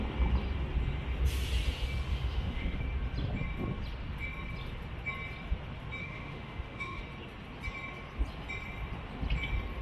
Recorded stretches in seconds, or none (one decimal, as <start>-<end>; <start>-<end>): 0.0-2.1; 2.8-6.0; 7.0-9.8